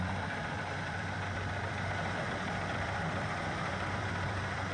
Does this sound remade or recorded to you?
remade